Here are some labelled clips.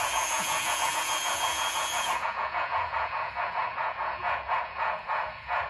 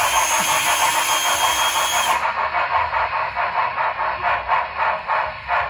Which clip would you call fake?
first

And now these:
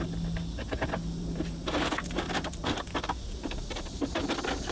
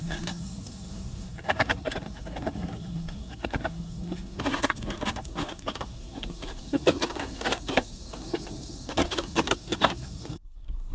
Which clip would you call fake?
second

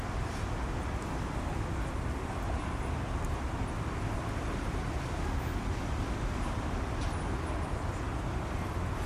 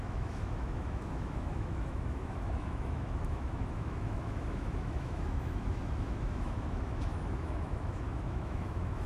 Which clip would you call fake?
second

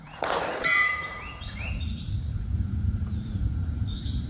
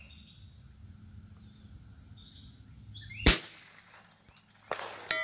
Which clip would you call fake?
first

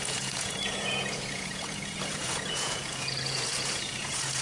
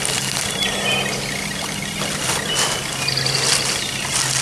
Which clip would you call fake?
first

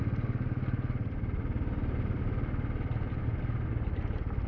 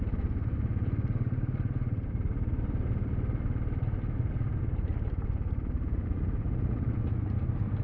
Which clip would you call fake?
second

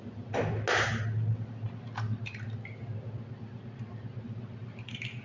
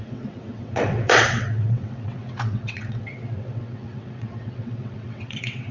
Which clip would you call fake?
second